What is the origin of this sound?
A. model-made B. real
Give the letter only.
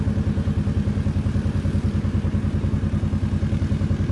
B